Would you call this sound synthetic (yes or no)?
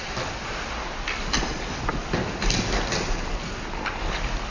no